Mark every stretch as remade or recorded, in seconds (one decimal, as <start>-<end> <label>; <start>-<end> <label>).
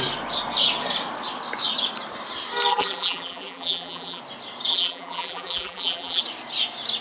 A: 0.0-2.7 recorded; 2.7-4.2 remade; 4.2-4.7 recorded; 4.7-6.2 remade; 6.2-7.0 recorded